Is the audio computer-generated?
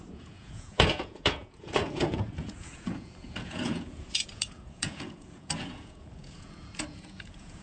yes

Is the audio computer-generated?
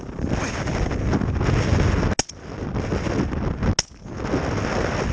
no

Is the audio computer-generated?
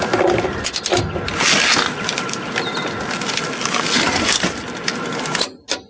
no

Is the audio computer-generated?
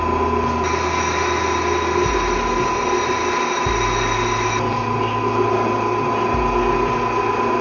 no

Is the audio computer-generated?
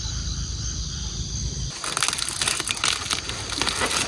no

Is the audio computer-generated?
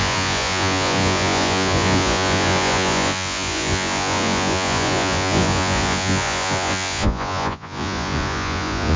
yes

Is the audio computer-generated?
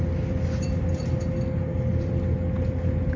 no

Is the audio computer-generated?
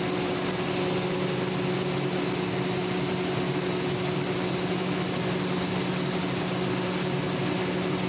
no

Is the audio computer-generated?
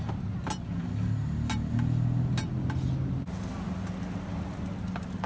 no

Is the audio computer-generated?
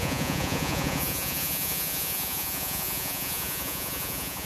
yes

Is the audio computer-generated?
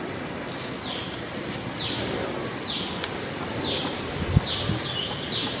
no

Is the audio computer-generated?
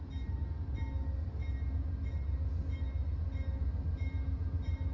no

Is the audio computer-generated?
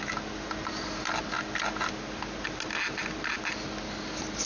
no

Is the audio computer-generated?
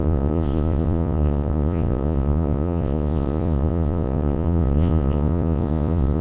yes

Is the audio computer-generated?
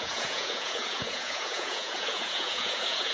yes